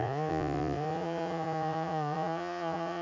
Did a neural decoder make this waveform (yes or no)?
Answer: yes